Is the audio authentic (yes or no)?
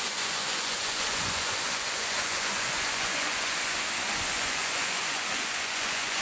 no